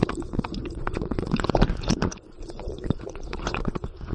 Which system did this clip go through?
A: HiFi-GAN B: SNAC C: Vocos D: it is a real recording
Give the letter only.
C